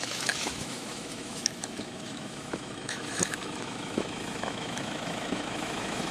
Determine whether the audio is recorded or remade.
remade